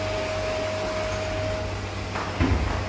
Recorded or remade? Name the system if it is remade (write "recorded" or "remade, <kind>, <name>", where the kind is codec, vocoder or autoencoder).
recorded